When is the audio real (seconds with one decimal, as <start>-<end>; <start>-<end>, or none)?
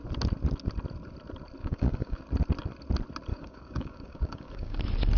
0.0-1.6; 2.2-3.3; 4.8-5.2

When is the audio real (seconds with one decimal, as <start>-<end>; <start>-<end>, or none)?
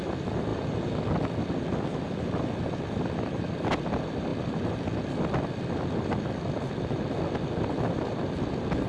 0.0-8.9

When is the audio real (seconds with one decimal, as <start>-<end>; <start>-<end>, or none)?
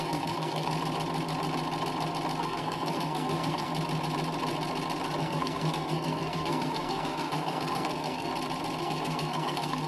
0.7-2.4; 3.7-5.2; 8.3-8.8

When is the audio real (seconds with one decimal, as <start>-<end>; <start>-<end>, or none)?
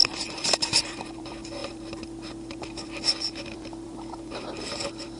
none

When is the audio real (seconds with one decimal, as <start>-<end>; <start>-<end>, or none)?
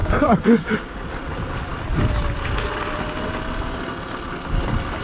1.0-5.0